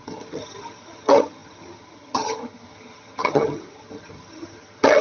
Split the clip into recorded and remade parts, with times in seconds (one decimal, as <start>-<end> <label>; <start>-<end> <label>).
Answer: 0.0-5.0 remade

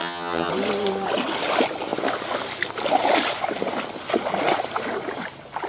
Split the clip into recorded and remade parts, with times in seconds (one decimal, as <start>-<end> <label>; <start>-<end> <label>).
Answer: 0.0-0.5 remade; 0.5-5.7 recorded

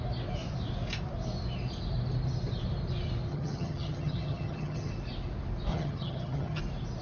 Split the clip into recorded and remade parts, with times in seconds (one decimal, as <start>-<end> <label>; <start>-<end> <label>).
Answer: 0.0-3.3 recorded; 3.3-4.9 remade; 4.9-5.7 recorded; 5.7-6.6 remade; 6.6-7.0 recorded